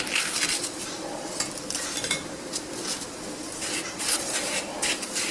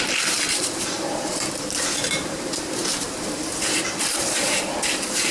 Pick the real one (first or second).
first